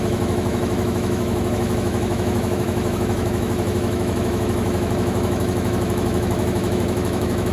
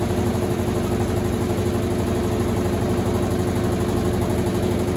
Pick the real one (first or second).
second